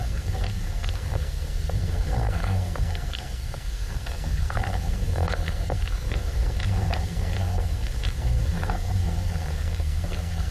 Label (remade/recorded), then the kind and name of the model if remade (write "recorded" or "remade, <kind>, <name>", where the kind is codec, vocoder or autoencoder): remade, codec, SNAC